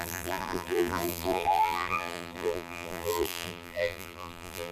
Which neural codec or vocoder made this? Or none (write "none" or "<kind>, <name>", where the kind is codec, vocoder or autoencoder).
vocoder, BigVGAN v2